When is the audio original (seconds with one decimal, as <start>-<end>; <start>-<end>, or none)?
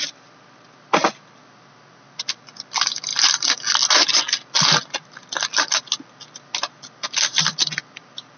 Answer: 0.0-8.4